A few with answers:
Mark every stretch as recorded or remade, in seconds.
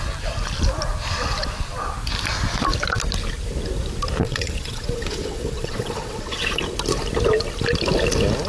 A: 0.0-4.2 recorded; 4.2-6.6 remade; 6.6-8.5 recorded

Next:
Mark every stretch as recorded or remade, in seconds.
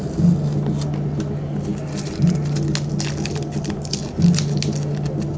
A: 0.0-5.4 recorded